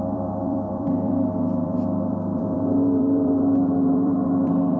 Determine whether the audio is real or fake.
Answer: fake